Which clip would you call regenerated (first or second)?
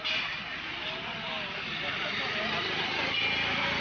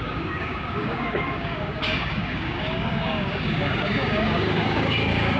second